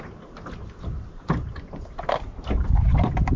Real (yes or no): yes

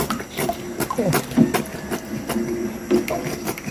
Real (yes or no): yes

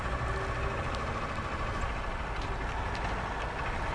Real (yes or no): yes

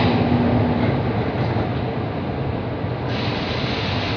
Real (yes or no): yes